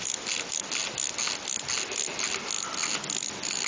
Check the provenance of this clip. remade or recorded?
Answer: recorded